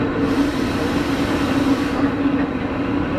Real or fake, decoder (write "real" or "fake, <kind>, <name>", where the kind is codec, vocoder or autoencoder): real